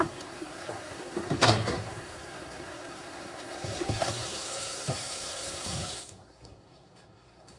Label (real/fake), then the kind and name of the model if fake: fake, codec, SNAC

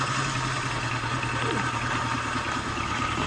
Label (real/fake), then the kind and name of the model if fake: real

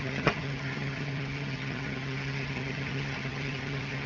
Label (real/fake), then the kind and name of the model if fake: fake, vocoder, HiFi-GAN